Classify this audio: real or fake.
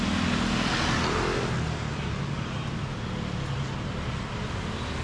real